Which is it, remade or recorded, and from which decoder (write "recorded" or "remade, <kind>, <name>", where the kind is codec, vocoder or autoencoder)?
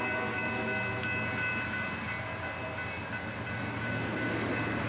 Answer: recorded